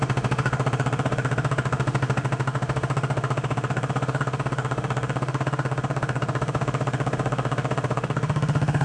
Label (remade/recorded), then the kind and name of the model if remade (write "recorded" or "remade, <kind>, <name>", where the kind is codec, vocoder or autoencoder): remade, autoencoder, DAC-VAE